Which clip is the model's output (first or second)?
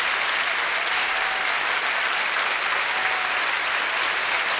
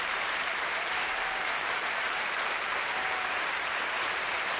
second